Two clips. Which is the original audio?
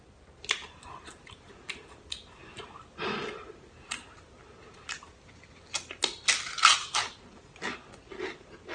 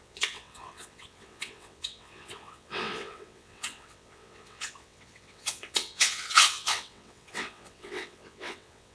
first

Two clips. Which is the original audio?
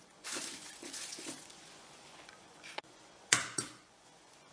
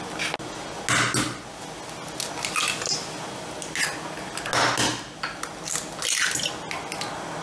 second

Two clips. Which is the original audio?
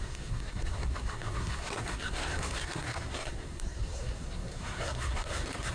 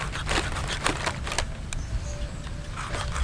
second